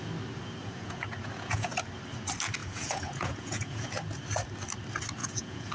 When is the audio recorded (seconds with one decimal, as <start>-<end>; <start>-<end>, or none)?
0.0-0.6; 1.7-2.6; 3.9-5.2